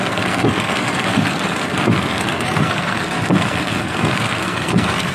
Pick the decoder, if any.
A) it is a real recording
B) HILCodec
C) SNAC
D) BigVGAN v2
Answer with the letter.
C